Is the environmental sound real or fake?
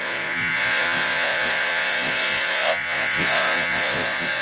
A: fake